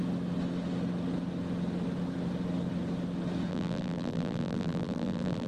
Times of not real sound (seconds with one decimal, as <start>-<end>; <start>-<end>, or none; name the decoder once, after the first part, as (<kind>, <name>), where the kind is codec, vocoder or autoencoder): 3.5-5.5 (vocoder, BigVGAN v2)